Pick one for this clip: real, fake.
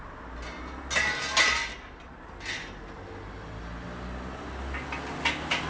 real